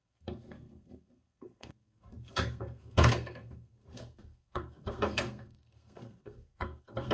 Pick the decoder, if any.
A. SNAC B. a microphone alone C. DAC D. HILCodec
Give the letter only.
A